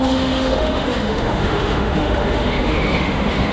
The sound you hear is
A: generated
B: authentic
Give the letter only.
A